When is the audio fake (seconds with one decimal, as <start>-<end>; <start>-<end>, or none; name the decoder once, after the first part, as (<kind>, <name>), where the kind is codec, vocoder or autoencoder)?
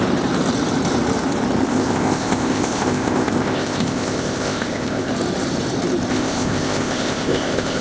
1.7-5.1 (codec, ZipCodec); 6.1-7.8